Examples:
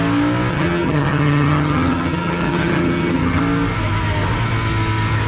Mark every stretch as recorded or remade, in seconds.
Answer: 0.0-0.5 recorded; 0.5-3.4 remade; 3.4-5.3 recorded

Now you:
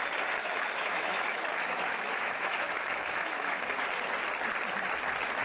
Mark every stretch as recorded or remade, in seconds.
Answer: 0.0-0.4 recorded; 0.4-3.6 remade; 3.6-5.4 recorded

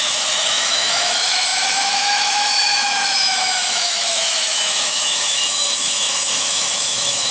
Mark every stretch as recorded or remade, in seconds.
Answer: 0.0-7.3 remade